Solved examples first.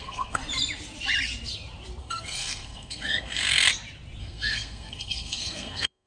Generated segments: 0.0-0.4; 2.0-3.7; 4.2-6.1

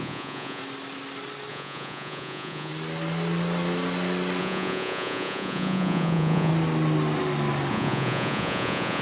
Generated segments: 0.0-0.6; 1.5-2.7; 4.4-6.5; 7.7-9.0

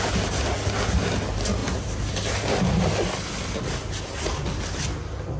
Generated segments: none

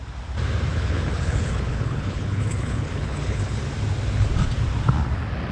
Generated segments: 0.7-3.6